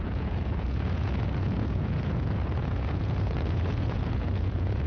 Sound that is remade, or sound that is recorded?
remade